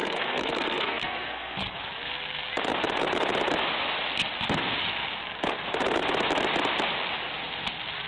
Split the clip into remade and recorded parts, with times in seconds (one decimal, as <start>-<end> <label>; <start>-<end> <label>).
0.0-1.8 remade; 1.8-8.1 recorded